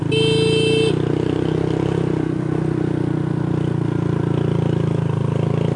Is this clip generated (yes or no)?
no